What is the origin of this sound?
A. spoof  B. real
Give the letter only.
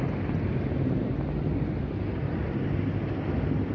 B